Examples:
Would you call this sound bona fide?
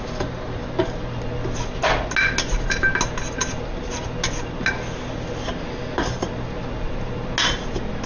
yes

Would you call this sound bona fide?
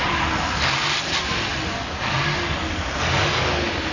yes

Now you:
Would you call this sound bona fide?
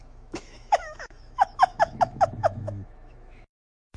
no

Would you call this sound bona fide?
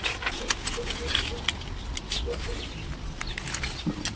yes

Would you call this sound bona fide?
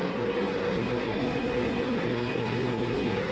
no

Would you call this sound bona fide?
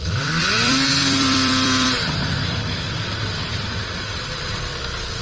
no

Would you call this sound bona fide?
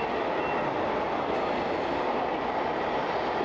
yes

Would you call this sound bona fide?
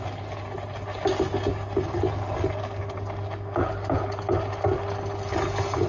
yes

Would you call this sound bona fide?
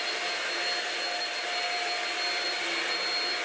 yes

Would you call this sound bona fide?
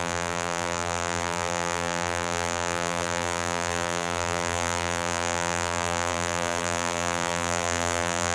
no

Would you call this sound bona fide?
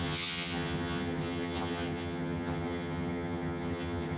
no